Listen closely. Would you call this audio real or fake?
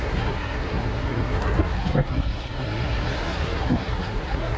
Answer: fake